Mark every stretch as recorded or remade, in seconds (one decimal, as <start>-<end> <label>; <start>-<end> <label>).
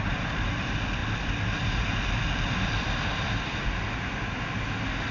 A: 0.0-5.1 recorded